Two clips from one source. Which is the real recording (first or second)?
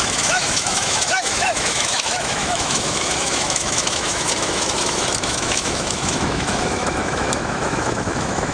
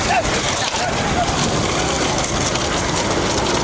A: second